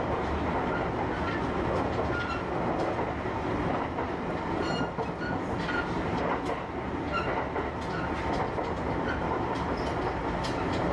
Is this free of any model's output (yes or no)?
yes